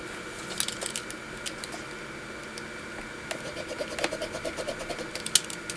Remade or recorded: recorded